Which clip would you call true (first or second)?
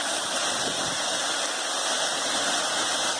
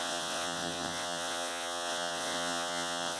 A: first